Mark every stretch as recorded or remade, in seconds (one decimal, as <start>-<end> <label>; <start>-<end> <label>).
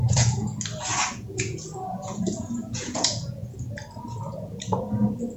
0.0-0.5 remade; 0.5-1.1 recorded; 1.1-3.4 remade; 3.4-5.4 recorded